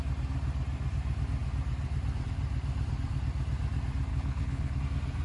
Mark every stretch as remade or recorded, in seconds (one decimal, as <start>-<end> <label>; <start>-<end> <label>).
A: 0.0-4.1 recorded; 4.1-4.8 remade; 4.8-5.2 recorded

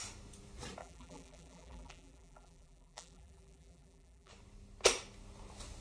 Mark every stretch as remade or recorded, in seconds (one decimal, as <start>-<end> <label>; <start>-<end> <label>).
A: 0.0-0.8 recorded; 0.8-4.3 remade; 4.3-5.8 recorded

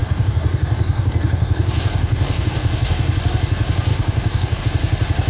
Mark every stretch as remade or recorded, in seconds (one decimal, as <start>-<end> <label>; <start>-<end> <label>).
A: 0.0-3.2 remade; 3.2-3.9 recorded; 3.9-4.6 remade; 4.6-5.3 recorded

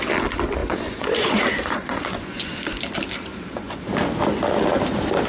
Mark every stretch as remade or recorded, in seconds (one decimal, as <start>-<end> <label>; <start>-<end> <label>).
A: 0.0-0.6 recorded; 0.6-2.8 remade; 2.8-3.3 recorded; 3.3-3.8 remade; 3.8-5.3 recorded

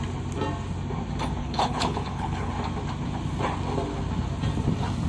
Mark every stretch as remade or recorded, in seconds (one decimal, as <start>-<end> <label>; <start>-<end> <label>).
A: 0.0-1.4 recorded; 1.4-2.5 remade; 2.5-5.1 recorded

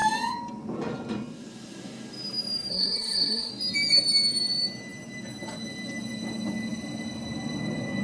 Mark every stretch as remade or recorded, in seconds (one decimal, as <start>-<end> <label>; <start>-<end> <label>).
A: 0.0-2.7 recorded; 2.7-3.5 remade; 3.5-8.0 recorded